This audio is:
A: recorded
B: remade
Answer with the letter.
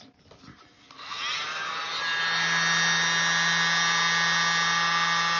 A